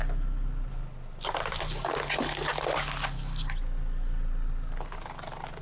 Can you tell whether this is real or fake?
real